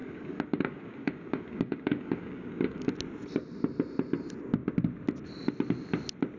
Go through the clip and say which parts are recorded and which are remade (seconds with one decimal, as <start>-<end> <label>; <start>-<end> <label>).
0.0-2.9 remade; 2.9-6.4 recorded